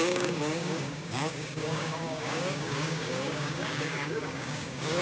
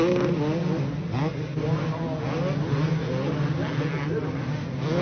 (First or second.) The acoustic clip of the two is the second